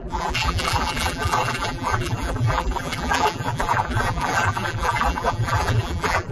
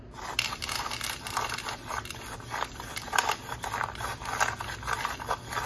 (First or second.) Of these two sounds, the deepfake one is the first